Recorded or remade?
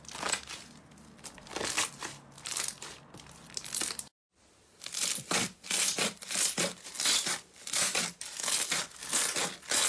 recorded